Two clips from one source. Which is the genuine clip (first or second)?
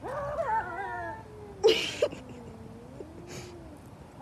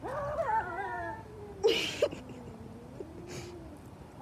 first